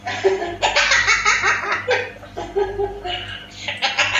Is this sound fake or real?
real